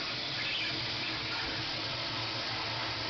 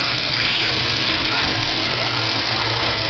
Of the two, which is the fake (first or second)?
second